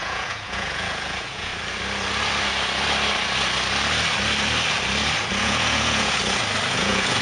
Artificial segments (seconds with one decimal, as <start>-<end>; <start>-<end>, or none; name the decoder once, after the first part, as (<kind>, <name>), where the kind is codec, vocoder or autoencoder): 0.0-1.5 (vocoder, Vocos); 5.4-6.2; 6.7-7.2